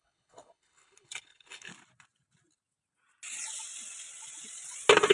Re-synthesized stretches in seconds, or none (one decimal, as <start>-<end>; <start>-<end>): 0.0-1.7

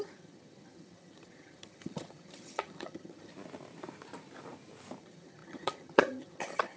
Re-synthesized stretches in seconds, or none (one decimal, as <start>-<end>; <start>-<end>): 0.0-3.3; 5.0-6.8